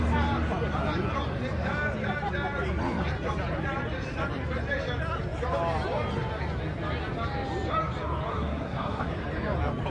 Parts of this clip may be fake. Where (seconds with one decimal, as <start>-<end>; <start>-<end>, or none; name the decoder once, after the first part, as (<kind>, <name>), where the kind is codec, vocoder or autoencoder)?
8.3-9.1 (codec, SNAC)